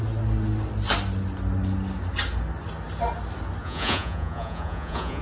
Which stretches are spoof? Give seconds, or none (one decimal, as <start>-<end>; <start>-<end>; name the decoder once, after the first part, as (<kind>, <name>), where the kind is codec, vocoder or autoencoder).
3.6-5.2 (vocoder, Vocos)